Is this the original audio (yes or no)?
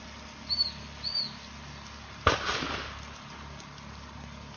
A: yes